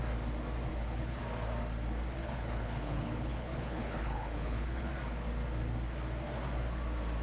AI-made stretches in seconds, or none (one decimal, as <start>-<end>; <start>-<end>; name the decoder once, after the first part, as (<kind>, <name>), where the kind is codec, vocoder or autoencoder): 0.7-1.2 (codec, HILCodec); 2.2-4.9